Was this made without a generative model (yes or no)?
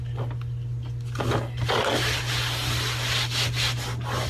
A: yes